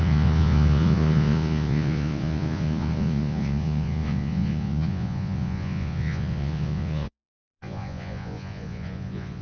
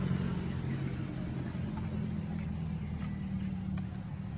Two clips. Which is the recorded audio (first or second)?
second